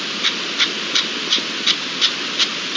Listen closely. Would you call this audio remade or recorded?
recorded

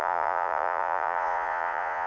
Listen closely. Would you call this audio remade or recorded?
remade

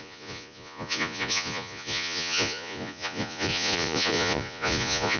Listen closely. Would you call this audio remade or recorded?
remade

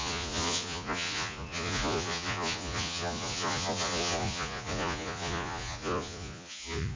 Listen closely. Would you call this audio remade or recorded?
remade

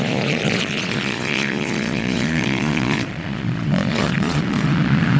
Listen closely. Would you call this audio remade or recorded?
remade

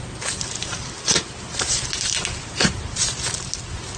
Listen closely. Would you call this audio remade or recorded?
recorded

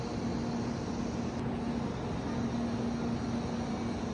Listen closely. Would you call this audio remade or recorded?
recorded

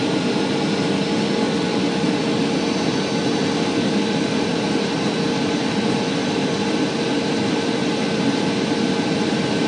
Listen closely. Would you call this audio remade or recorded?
recorded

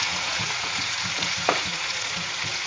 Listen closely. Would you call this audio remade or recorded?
remade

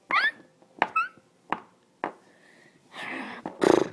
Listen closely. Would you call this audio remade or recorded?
recorded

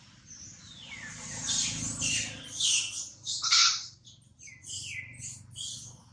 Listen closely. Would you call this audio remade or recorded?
recorded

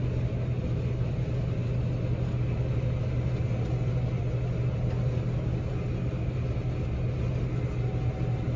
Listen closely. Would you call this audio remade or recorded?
recorded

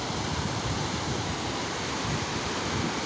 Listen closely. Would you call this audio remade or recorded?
recorded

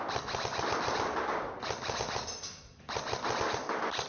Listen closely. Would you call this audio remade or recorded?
recorded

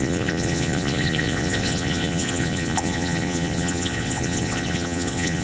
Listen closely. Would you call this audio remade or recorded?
remade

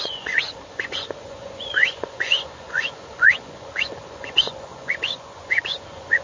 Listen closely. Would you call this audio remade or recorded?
remade